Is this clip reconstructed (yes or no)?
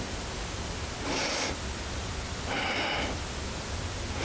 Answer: no